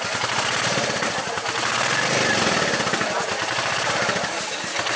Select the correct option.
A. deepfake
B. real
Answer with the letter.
B